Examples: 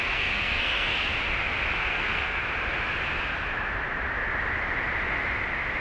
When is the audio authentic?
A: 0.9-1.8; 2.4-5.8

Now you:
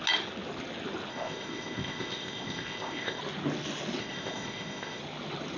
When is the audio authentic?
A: 0.0-1.1; 3.2-4.0; 5.0-5.6

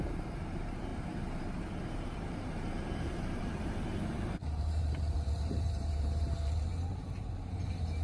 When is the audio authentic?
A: none

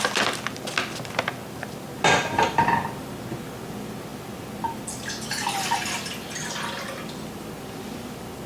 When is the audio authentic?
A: 0.0-8.5